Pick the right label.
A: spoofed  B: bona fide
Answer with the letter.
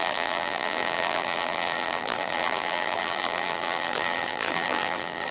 A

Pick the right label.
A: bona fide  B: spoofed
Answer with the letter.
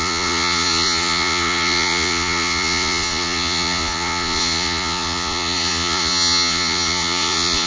B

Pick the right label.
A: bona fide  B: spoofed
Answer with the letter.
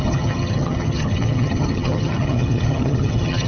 B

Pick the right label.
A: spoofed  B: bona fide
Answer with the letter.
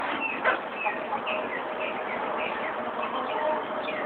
B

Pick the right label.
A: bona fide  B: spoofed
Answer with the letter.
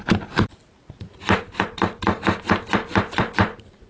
B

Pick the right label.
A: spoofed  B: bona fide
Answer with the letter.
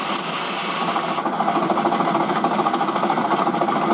B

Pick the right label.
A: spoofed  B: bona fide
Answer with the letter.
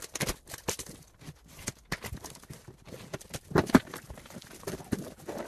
B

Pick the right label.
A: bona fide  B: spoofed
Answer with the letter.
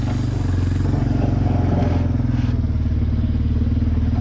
A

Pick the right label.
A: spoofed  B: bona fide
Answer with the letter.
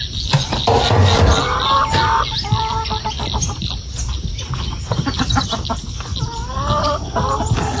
B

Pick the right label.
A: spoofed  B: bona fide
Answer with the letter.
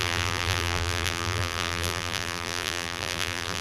A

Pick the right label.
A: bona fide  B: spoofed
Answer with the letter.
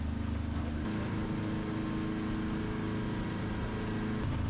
A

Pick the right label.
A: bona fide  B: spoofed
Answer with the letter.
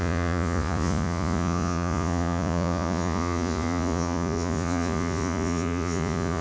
B